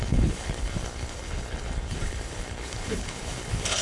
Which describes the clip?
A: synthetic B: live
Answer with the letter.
A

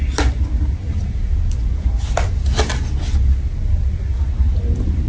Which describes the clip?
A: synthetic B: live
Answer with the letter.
B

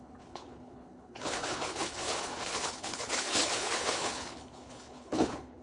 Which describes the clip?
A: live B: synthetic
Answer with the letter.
B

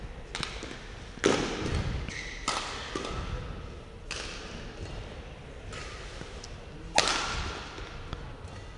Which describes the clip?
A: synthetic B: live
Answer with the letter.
B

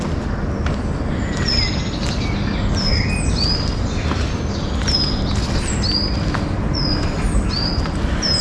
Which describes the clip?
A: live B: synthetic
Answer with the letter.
A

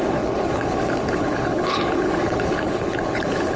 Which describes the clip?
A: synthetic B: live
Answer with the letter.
A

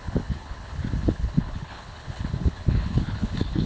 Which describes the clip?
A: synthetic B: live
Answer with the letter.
A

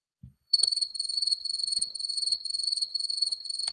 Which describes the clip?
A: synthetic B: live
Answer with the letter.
A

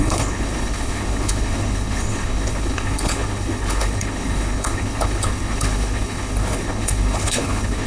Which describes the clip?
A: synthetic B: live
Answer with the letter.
A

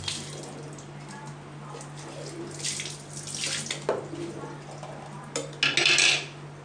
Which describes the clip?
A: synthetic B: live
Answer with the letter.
B